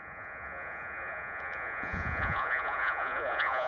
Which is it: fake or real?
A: fake